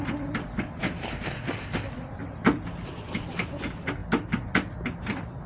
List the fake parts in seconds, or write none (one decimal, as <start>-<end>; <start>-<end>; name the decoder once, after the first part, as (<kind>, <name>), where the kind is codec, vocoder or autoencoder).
none